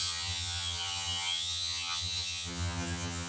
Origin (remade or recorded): remade